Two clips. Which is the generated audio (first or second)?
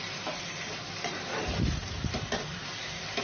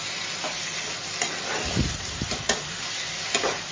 first